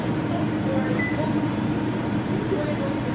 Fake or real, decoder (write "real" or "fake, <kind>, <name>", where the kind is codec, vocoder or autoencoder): real